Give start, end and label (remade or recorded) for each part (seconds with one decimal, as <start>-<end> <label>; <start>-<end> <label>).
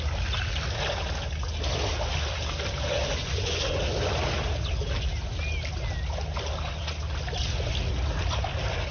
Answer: 0.0-3.2 recorded; 3.2-3.8 remade; 3.8-8.9 recorded